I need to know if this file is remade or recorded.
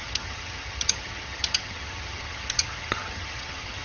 remade